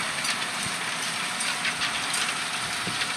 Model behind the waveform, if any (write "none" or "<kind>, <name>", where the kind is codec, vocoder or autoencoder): vocoder, BigVGAN v2